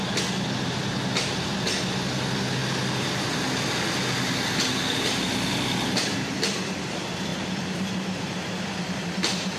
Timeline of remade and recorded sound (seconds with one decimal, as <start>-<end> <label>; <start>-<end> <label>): 0.0-7.3 recorded; 7.3-9.6 remade

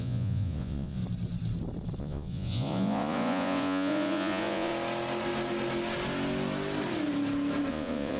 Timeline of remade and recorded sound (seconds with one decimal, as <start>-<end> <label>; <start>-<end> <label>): 0.0-1.0 remade; 1.0-2.0 recorded; 2.0-4.7 remade; 4.7-7.7 recorded; 7.7-8.2 remade

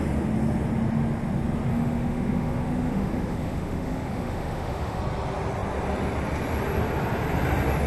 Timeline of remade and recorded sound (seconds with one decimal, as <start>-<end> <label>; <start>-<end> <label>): 0.0-1.7 recorded; 1.7-5.0 remade; 5.0-7.9 recorded

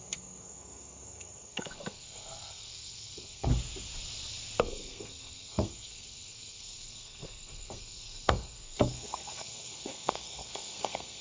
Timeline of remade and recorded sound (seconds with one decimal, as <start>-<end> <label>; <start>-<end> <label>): 0.0-3.5 remade; 3.5-4.6 recorded; 4.6-11.2 remade

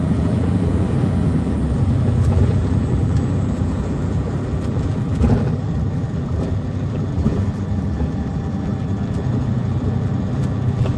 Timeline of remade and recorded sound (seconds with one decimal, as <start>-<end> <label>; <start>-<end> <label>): 0.0-11.0 remade